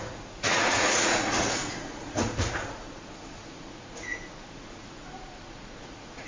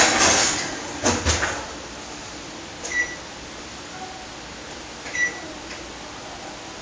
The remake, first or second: first